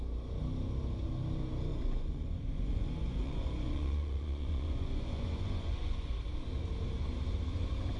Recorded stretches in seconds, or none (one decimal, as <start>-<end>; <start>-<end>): 0.0-1.7; 6.1-8.0